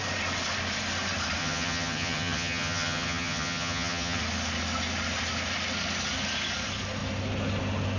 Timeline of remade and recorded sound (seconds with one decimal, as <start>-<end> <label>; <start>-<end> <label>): 0.0-1.4 recorded; 1.4-4.2 remade; 4.2-8.0 recorded